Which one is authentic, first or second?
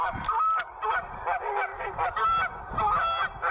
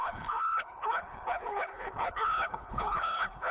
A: first